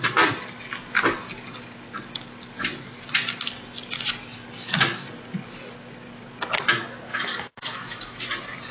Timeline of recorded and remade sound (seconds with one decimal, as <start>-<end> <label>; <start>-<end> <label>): 0.0-7.1 recorded; 7.1-8.2 remade; 8.2-8.7 recorded